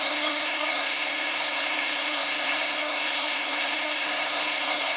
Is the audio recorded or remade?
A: remade